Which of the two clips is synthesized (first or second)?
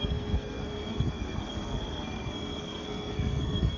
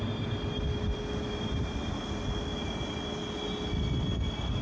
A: first